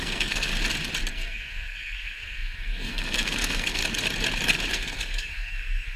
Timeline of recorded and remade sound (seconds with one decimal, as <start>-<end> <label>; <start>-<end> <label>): 0.0-0.5 remade; 0.5-1.1 recorded; 1.1-3.8 remade; 3.8-4.7 recorded; 4.7-6.0 remade